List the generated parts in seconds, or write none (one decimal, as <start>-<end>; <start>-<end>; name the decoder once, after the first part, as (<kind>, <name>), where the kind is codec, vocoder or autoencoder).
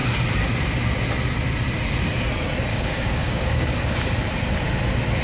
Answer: 2.7-4.1 (codec, DAC)